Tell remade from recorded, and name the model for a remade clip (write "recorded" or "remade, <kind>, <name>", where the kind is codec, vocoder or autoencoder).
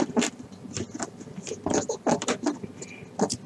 recorded